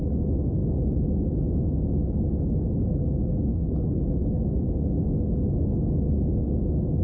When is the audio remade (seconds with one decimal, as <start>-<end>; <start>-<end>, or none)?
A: 3.5-4.0